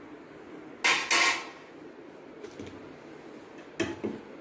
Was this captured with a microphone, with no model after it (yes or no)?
yes